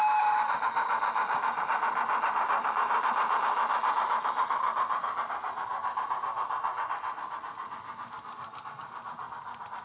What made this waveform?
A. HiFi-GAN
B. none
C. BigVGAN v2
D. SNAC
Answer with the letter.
B